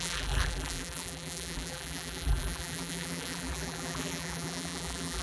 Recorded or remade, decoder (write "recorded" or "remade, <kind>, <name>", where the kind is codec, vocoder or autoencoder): remade, vocoder, BigVGAN v2